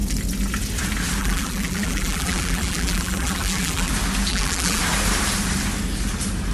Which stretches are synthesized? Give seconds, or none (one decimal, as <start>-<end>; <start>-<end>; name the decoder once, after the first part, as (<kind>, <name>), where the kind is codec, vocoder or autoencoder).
1.2-3.9 (vocoder, BigVGAN v2); 4.3-4.8